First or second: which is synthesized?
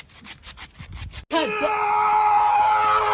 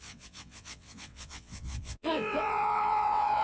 second